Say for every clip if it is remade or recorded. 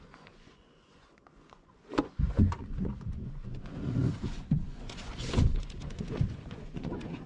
remade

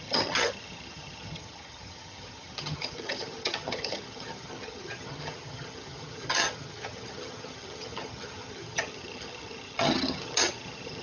remade